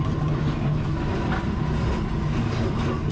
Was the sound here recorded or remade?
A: recorded